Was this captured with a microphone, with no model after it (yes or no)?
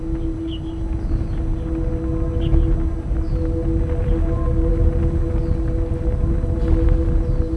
yes